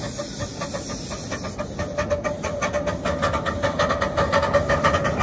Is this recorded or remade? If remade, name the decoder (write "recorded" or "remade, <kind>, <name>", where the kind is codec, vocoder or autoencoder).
recorded